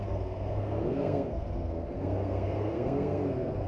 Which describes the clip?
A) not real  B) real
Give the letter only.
A